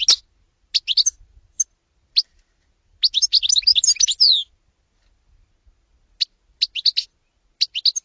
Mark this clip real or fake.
real